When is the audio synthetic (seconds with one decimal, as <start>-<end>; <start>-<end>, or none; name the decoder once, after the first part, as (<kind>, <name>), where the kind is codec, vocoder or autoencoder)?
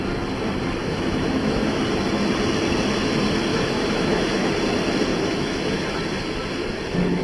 0.8-1.8 (autoencoder, DAC-VAE); 3.5-4.5; 5.1-6.0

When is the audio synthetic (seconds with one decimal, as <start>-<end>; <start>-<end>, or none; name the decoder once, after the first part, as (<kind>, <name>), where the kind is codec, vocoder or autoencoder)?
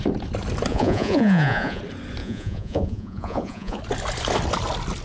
0.7-1.8 (vocoder, Vocos); 2.2-3.8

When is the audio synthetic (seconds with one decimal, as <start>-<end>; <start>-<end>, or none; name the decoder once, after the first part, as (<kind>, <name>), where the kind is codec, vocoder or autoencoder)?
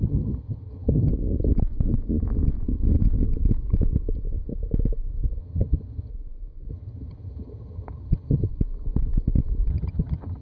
0.0-1.1 (vocoder, HiFi-GAN); 5.4-6.1; 6.7-8.5; 9.7-10.4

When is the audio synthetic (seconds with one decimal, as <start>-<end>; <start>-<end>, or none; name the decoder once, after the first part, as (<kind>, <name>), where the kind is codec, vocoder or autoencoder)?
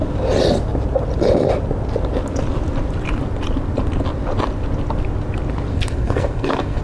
5.7-6.8 (codec, SNAC)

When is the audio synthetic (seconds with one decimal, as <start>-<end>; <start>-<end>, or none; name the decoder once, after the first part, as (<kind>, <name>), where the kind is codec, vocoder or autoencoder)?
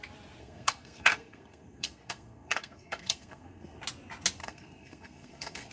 0.4-3.8 (codec, SNAC); 4.4-5.7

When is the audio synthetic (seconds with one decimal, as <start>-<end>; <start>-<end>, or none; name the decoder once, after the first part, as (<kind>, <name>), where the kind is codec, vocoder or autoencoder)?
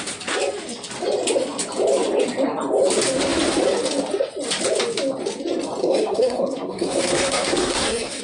5.8-8.2 (codec, SNAC)